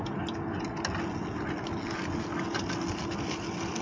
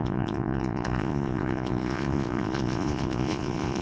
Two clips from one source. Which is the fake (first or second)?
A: second